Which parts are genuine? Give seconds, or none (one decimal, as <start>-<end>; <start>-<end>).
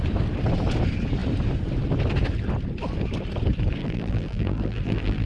0.0-3.8